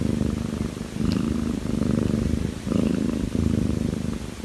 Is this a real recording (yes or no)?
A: yes